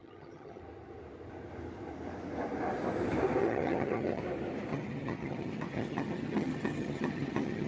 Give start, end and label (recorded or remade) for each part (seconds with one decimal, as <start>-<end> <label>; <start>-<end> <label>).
0.0-0.6 remade; 0.6-3.4 recorded; 3.4-4.2 remade; 4.2-4.7 recorded; 4.7-7.7 remade